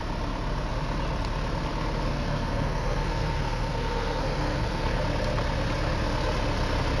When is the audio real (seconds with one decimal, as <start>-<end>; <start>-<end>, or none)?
0.0-2.1; 5.0-7.0